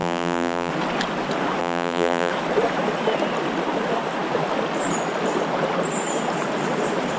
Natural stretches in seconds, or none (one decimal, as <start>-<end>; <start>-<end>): 0.7-1.6; 2.3-7.2

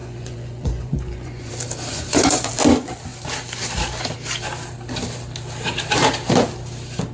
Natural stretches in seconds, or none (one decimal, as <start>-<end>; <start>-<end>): 1.5-1.9; 2.5-7.1

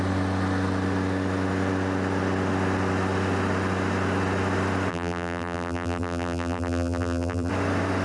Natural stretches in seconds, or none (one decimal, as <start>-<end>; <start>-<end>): 0.0-4.9; 7.5-8.0

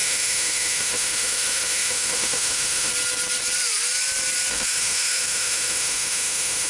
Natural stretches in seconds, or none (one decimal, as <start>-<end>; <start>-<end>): 2.9-4.5

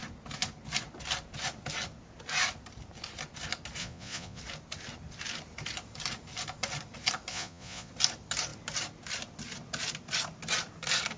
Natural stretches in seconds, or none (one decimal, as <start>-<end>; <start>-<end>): 0.0-3.8; 4.4-7.3; 7.9-11.2